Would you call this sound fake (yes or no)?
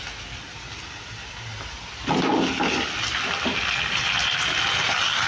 no